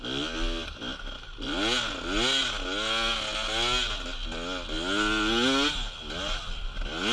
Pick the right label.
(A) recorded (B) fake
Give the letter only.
A